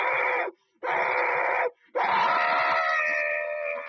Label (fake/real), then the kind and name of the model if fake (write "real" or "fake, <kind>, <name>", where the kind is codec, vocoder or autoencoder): real